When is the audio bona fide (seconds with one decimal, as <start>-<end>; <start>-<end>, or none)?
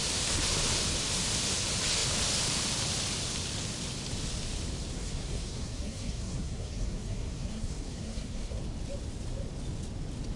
0.0-4.9; 8.6-10.4